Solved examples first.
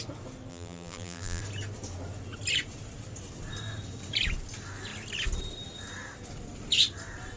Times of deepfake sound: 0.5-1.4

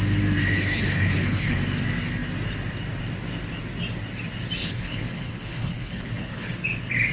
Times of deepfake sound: 0.5-1.6; 4.6-6.5

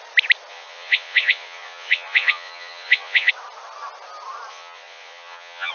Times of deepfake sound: 0.5-3.3; 4.5-5.7

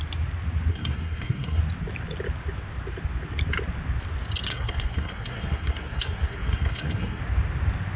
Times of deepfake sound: 0.7-1.6; 4.5-7.2

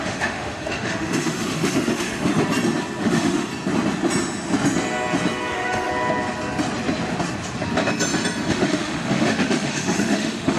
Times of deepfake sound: 0.0-2.3; 3.0-3.5; 5.5-5.9; 8.5-10.6

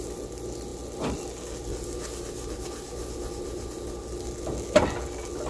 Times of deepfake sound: none

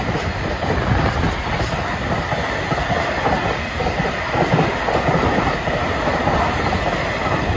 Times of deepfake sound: none